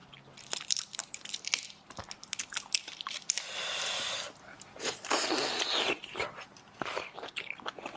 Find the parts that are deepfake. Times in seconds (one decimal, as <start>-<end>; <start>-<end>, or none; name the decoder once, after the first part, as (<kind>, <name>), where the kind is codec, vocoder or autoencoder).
none